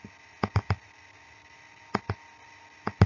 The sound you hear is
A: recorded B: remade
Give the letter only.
A